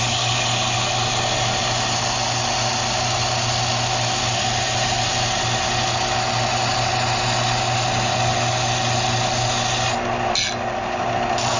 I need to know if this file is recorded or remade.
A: recorded